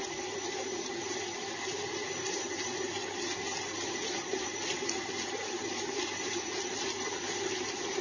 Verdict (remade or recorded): recorded